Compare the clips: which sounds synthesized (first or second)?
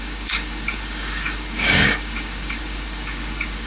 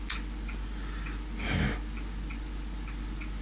first